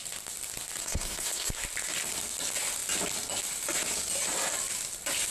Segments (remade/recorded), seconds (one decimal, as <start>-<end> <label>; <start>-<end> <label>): 0.0-0.8 recorded; 0.8-1.5 remade; 1.5-5.3 recorded